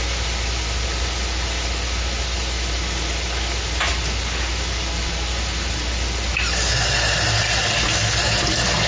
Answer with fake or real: real